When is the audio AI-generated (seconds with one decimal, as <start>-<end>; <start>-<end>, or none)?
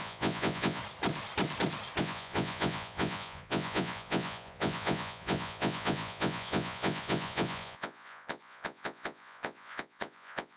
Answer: 0.0-0.8; 2.0-10.6